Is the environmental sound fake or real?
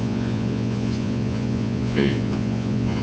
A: fake